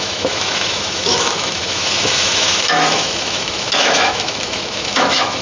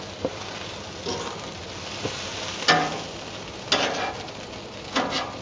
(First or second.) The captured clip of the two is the second